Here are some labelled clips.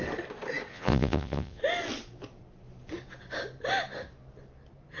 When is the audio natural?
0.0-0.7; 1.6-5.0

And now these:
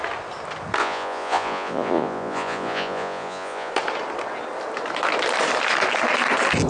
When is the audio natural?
0.0-0.8; 3.7-6.7